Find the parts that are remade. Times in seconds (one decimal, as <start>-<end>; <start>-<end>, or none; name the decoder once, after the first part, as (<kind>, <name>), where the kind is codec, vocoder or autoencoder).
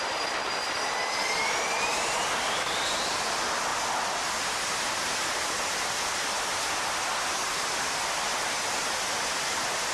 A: none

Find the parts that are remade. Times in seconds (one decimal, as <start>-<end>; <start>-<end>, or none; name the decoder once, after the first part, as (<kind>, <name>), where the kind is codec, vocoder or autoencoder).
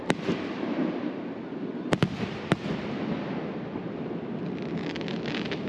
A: none